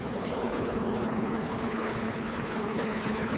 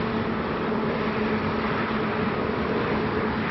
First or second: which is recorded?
second